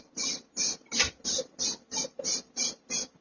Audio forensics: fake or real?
real